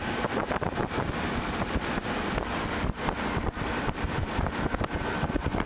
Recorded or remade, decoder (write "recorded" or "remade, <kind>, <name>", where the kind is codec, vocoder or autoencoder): remade, vocoder, BigVGAN v2